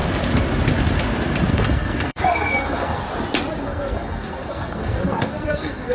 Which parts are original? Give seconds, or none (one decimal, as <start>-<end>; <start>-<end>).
0.0-1.5; 3.0-3.6